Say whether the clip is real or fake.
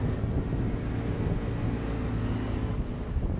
real